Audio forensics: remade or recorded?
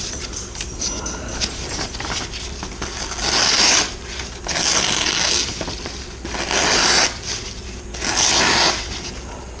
recorded